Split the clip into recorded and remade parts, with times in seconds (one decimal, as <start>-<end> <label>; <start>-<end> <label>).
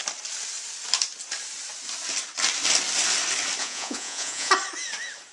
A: 0.0-3.6 recorded; 3.6-4.5 remade; 4.5-5.3 recorded